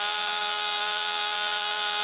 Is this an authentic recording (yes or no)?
no